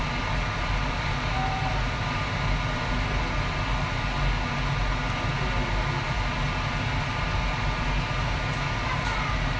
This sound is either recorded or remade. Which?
recorded